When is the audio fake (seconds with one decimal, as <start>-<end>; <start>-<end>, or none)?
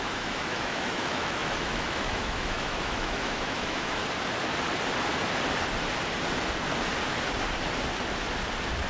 0.0-4.0